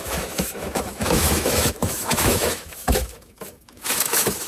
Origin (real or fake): fake